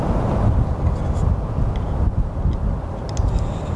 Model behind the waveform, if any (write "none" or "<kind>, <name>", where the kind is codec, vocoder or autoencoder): none